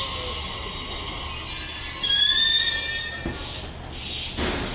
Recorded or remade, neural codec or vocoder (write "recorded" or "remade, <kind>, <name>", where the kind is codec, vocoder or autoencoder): recorded